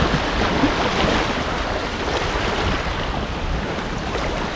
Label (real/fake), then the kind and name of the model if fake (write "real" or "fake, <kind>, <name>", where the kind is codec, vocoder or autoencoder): real